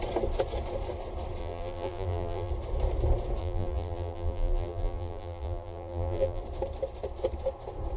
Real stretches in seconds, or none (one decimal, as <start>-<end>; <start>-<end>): 0.0-1.4; 2.5-3.4; 6.4-8.0